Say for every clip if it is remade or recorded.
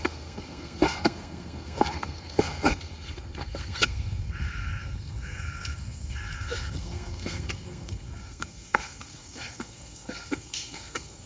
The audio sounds remade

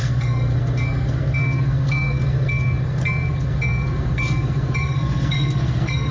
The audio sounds remade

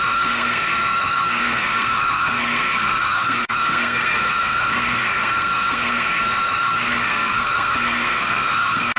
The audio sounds remade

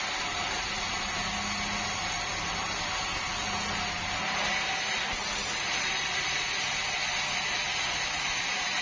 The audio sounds recorded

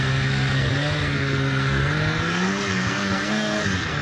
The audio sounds remade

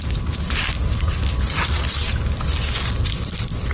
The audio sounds recorded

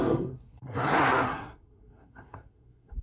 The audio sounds remade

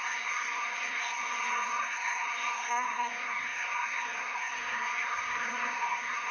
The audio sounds remade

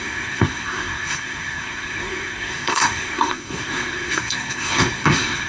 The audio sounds remade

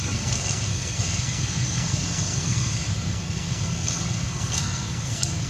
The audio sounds remade